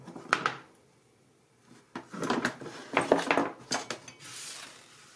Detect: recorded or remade recorded